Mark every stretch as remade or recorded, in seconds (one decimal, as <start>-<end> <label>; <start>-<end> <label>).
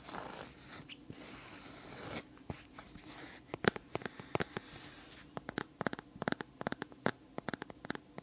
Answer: 0.0-8.2 recorded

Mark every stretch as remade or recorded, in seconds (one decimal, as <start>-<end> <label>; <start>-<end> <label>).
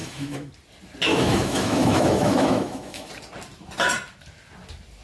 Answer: 0.0-0.5 remade; 0.5-1.1 recorded; 1.1-3.1 remade; 3.1-5.0 recorded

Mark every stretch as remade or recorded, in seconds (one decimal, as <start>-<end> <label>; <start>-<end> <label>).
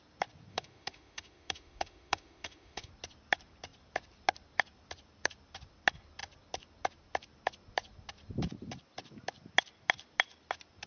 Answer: 0.0-0.5 recorded; 0.5-2.9 remade; 2.9-10.9 recorded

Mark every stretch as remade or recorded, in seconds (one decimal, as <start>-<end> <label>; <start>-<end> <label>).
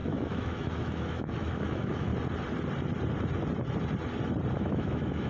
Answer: 0.0-2.1 remade; 2.1-4.5 recorded; 4.5-5.3 remade